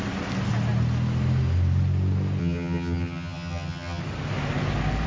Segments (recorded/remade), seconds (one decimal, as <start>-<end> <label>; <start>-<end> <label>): 0.0-2.4 recorded; 2.4-4.0 remade; 4.0-5.1 recorded